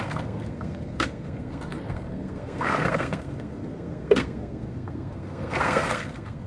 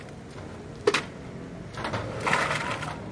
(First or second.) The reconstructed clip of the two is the first